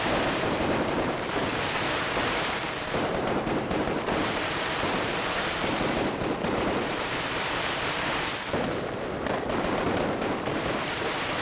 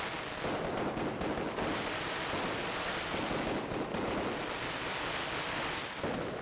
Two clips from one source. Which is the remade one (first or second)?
first